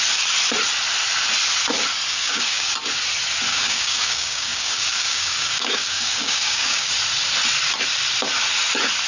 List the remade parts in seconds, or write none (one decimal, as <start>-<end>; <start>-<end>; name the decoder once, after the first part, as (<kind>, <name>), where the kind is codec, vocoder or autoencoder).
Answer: 2.1-2.7 (codec, DAC); 3.5-6.9